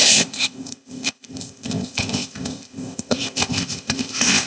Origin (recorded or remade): remade